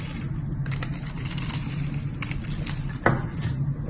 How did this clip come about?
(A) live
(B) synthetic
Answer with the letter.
A